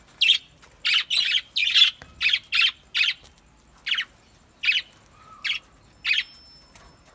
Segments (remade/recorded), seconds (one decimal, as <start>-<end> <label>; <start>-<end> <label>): 0.0-7.1 recorded